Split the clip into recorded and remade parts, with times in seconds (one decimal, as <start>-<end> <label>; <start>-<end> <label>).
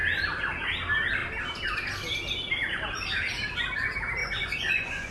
0.0-4.2 recorded; 4.2-5.1 remade